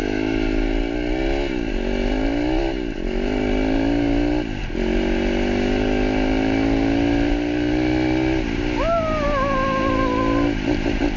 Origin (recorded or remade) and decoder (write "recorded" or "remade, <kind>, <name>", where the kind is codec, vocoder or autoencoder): recorded